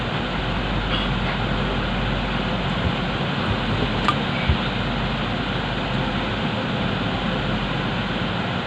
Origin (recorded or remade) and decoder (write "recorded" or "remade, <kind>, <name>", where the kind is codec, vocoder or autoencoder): recorded